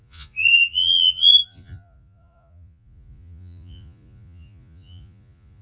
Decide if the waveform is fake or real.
fake